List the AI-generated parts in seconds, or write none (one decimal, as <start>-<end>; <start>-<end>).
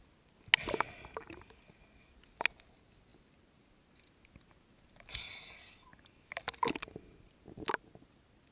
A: none